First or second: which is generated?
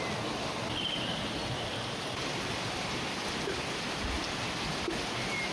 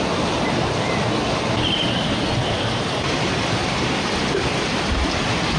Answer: second